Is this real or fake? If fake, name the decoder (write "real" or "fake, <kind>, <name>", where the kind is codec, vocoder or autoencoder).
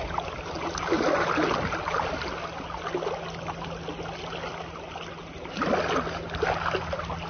real